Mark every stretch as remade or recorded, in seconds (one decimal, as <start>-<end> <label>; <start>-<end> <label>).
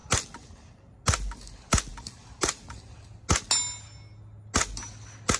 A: 0.0-5.4 recorded